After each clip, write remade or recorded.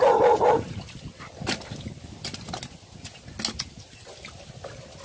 recorded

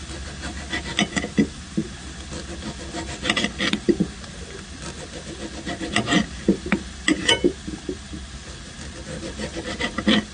recorded